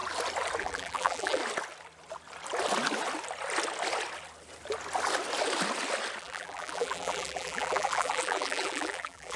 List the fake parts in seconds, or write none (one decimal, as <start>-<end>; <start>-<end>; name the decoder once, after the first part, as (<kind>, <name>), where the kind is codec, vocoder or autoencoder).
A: 0.6-1.4 (vocoder, BigVGAN v2); 6.2-9.4